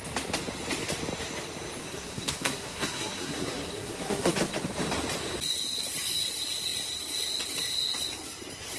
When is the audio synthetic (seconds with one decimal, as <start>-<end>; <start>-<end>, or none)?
1.8-4.3